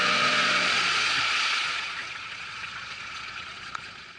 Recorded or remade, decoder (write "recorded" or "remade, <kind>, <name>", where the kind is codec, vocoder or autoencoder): remade, vocoder, Vocos